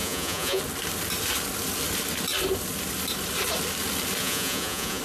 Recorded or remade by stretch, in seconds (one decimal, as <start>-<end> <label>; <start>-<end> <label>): 0.0-0.6 remade; 0.6-4.2 recorded; 4.2-5.0 remade